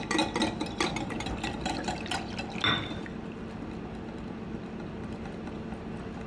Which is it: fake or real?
real